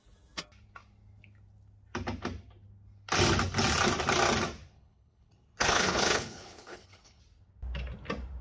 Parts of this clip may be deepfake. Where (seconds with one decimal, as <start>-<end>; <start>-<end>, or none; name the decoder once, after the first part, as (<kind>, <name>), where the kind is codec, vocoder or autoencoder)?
4.7-7.2 (codec, HILCodec)